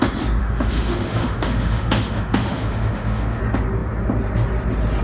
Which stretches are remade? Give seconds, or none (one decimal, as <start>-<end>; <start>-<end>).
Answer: 0.4-3.4